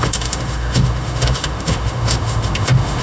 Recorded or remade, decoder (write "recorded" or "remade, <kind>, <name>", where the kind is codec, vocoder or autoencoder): remade, autoencoder, DAC-VAE